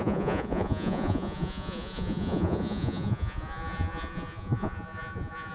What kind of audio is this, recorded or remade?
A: remade